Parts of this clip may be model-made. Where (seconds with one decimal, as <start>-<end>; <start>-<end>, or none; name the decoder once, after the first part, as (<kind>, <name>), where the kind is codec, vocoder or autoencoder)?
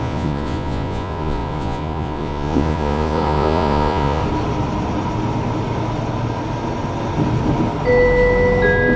0.0-4.2 (vocoder, Vocos)